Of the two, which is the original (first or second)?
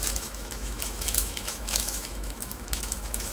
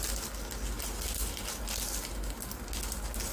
second